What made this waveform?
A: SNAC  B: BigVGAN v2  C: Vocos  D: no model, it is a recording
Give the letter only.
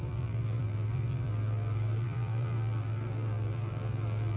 B